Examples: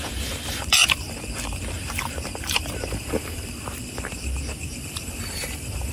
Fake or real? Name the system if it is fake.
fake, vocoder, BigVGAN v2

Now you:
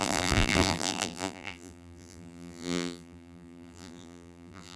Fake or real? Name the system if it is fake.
fake, vocoder, BigVGAN v2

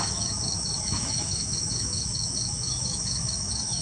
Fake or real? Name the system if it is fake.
fake, autoencoder, DAC-VAE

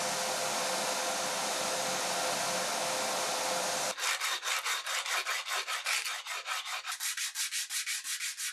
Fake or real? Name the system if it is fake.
real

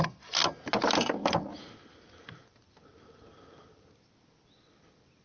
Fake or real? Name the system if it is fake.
real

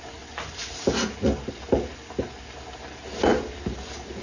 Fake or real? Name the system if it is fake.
real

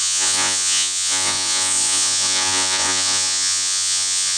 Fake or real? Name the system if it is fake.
fake, vocoder, Vocos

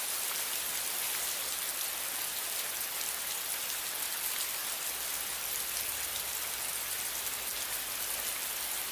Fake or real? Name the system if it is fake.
real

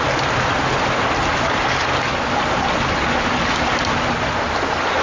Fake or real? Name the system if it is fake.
real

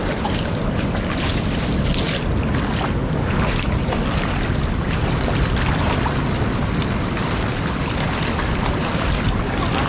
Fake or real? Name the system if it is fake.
real